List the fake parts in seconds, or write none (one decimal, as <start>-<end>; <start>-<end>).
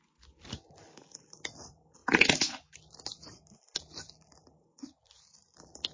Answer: 2.0-2.5